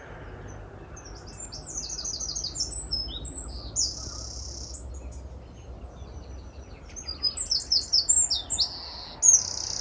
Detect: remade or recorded recorded